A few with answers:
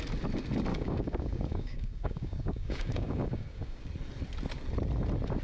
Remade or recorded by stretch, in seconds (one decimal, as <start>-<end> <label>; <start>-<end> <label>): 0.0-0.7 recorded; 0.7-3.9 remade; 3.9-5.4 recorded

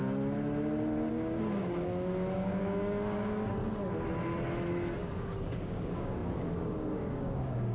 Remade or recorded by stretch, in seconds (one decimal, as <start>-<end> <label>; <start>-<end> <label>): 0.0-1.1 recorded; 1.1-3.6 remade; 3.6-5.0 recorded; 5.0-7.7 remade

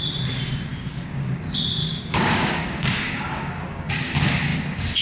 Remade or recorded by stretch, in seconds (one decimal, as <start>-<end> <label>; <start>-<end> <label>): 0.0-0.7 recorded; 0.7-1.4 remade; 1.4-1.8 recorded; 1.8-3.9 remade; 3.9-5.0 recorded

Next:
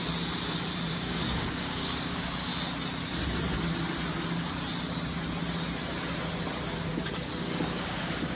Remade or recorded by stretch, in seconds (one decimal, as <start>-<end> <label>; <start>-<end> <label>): 0.0-0.9 recorded; 0.9-2.5 remade; 2.5-6.9 recorded; 6.9-8.3 remade

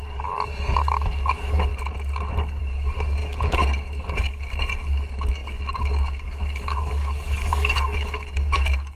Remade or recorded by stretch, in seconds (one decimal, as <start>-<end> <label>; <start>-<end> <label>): 0.0-1.7 remade; 1.7-2.6 recorded; 2.6-8.9 remade

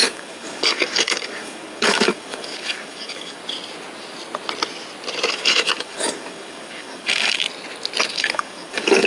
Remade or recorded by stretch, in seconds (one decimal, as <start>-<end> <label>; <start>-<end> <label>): 0.0-3.4 remade; 3.4-5.3 recorded; 5.3-7.4 remade; 7.4-8.1 recorded; 8.1-9.1 remade

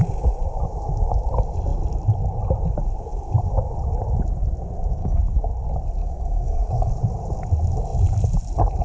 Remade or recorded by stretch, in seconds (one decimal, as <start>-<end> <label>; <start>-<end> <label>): 0.0-5.0 recorded; 5.0-5.5 remade; 5.5-6.0 recorded; 6.0-6.9 remade; 6.9-8.8 recorded